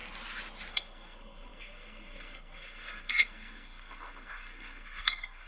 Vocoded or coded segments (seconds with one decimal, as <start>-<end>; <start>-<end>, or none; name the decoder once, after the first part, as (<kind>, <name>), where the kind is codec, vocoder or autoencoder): 0.7-5.5 (codec, SNAC)